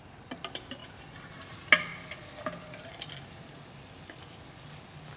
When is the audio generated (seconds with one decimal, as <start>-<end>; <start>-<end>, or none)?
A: none